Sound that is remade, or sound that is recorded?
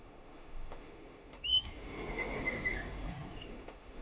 remade